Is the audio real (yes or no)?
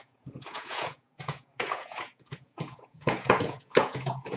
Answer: no